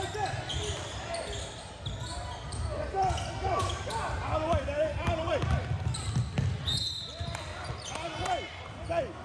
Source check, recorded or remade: recorded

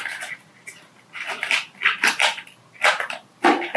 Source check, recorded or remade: recorded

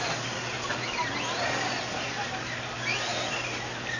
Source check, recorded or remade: recorded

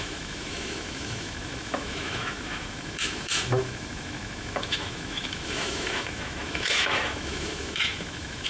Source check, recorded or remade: remade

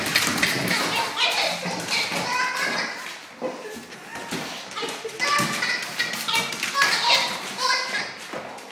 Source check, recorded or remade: recorded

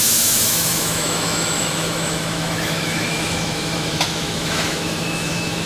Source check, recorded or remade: remade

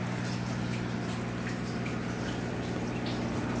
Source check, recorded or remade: recorded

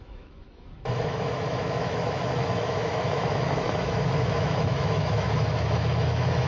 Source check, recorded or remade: remade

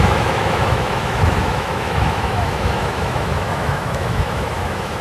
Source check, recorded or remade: remade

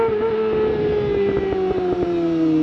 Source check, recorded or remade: recorded